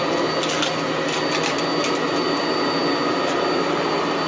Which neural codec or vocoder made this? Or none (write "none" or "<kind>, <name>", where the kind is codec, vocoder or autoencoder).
none